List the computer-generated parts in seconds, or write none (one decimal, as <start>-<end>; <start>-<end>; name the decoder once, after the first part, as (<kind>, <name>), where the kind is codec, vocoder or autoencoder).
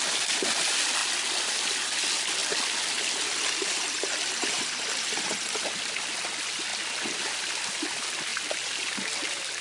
1.0-2.0 (vocoder, BigVGAN v2); 2.4-4.7; 6.7-7.7